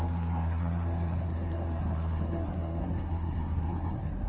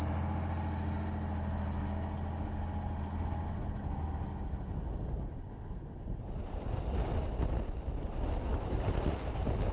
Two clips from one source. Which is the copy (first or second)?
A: first